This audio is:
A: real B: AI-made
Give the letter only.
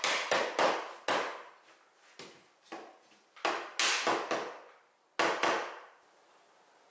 A